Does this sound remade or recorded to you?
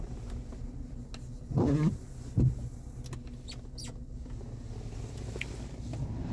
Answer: recorded